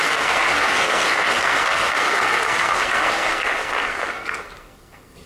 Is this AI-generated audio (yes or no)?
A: yes